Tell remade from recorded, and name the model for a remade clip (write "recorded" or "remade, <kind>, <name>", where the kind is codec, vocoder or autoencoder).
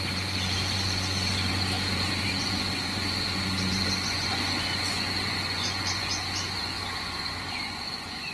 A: remade, vocoder, Vocos